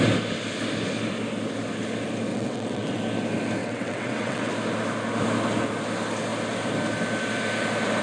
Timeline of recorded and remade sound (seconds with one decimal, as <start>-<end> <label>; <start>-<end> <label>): 0.0-2.3 recorded; 2.3-3.0 remade; 3.0-3.6 recorded; 3.6-4.5 remade; 4.5-8.0 recorded